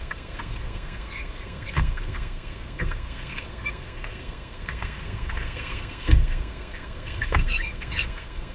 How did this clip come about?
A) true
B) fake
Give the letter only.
B